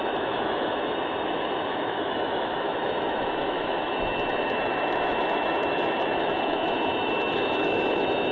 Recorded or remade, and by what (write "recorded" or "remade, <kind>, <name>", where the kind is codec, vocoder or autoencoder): remade, autoencoder, DAC-VAE